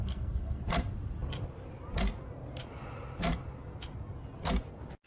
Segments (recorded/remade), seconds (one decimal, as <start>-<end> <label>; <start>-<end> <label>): 0.0-0.6 remade; 0.6-5.1 recorded